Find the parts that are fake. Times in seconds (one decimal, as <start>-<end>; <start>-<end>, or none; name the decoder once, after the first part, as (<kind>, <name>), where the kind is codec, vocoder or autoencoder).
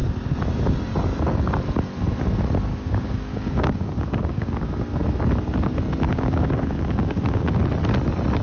2.7-4.7 (codec, DAC); 6.1-7.6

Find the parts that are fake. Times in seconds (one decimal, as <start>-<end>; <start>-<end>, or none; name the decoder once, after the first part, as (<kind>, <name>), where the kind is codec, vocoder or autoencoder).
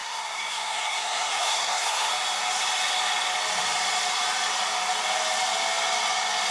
0.0-2.1 (codec, SNAC)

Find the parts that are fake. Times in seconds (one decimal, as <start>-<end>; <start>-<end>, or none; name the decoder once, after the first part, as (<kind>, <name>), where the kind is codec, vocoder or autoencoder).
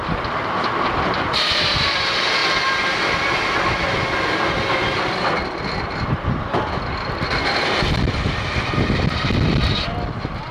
0.0-2.4 (vocoder, BigVGAN v2); 6.1-10.5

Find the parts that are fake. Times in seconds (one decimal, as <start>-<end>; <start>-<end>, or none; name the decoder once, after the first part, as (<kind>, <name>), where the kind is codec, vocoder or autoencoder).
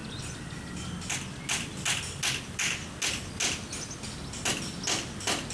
none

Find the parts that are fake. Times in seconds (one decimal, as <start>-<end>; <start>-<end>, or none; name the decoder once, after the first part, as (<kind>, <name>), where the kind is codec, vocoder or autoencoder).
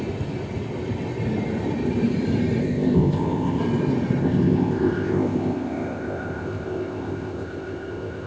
2.6-3.6 (codec, ZipCodec); 4.2-8.3